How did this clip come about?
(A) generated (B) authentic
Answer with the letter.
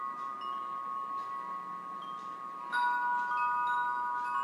B